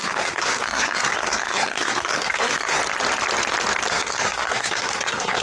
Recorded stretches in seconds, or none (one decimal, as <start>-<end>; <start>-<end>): 2.8-3.9